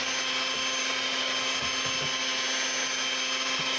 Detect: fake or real real